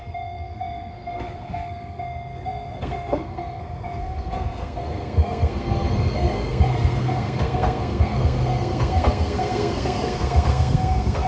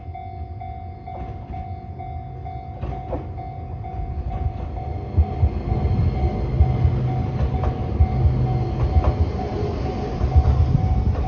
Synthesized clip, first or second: first